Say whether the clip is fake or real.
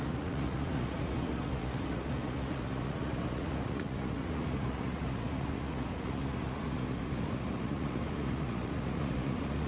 fake